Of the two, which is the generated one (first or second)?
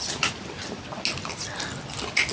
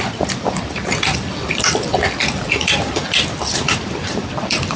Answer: second